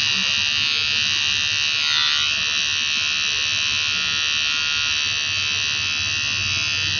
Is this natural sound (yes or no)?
yes